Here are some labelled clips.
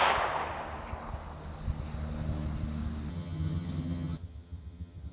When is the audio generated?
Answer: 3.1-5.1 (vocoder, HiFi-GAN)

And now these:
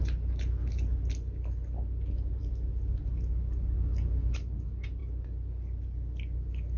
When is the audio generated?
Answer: none

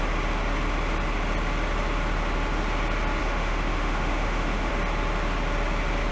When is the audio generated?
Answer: 3.2-4.7 (autoencoder, DAC-VAE)